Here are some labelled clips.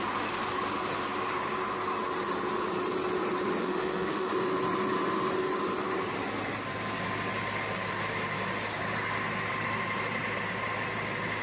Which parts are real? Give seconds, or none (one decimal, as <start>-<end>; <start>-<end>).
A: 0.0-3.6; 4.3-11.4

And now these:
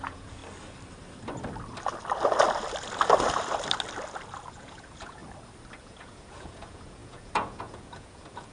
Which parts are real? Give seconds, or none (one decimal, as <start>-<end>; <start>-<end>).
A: 0.4-4.5; 5.2-5.8

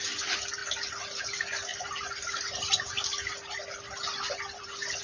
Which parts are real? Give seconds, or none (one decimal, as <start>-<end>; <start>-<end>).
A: 0.0-1.7; 2.9-3.6

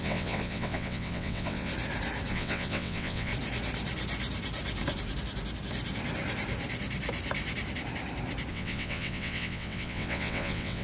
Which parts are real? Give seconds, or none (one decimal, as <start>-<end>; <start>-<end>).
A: 1.7-2.3; 3.3-8.5

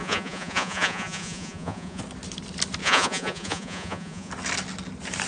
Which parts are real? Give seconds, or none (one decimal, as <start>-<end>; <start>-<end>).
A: 2.0-2.8; 4.3-5.3

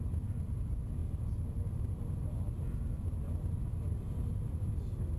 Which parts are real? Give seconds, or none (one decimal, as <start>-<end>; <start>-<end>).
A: 0.0-5.2